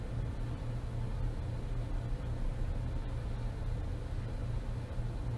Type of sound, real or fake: real